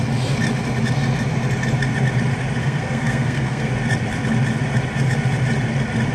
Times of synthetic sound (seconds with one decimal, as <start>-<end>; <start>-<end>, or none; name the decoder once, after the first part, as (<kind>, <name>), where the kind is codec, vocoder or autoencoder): 2.6-3.7 (codec, SNAC)